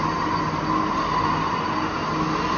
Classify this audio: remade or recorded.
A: recorded